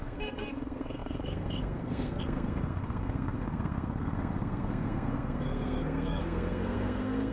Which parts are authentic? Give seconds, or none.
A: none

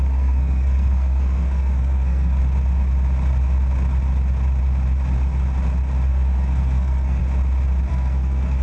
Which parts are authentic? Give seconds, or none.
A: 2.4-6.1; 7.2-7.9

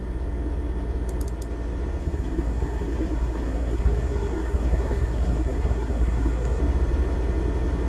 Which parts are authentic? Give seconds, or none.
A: 0.0-2.0; 6.6-7.9

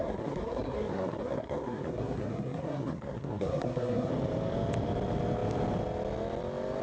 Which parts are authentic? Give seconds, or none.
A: 4.1-6.8

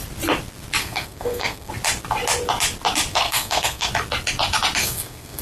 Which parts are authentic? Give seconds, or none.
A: 0.0-0.8; 1.7-3.1; 3.9-4.8